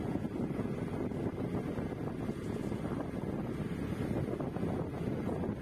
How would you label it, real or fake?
real